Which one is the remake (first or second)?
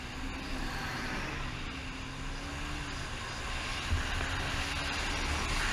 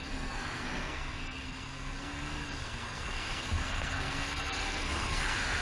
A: second